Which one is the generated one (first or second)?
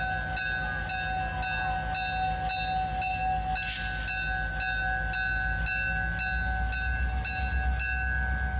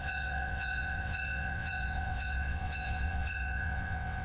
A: second